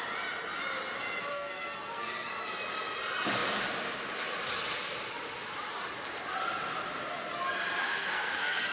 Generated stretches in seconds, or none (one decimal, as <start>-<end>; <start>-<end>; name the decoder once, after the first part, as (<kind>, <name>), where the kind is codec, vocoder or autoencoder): 1.3-2.3 (codec, SNAC); 7.8-8.7